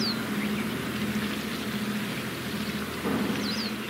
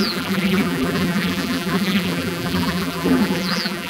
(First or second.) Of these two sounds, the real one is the first